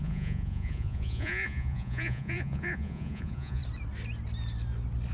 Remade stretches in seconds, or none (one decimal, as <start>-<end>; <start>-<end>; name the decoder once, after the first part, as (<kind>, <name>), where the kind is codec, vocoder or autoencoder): 0.0-3.6 (vocoder, Vocos)